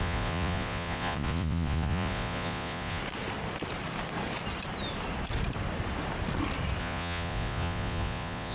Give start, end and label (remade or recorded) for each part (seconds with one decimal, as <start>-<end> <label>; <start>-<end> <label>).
0.0-3.0 remade; 3.0-6.8 recorded; 6.8-8.5 remade

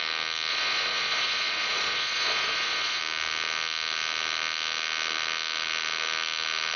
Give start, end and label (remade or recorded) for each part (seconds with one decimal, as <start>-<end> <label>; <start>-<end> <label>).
0.0-0.5 recorded; 0.5-3.0 remade; 3.0-6.8 recorded

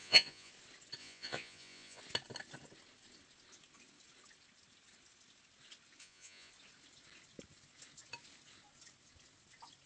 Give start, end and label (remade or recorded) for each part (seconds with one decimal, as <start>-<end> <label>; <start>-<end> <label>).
0.0-0.5 remade; 0.5-1.0 recorded; 1.0-2.0 remade; 2.0-6.0 recorded; 6.0-6.5 remade; 6.5-9.9 recorded

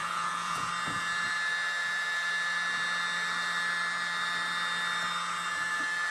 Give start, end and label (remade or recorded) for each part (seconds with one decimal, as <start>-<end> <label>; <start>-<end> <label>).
0.0-0.7 remade; 0.7-6.1 recorded